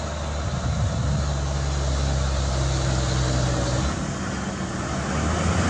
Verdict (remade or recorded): recorded